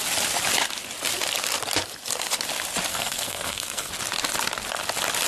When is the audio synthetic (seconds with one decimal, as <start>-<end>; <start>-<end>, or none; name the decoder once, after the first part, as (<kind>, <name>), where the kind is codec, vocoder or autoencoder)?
2.9-3.9 (codec, SNAC)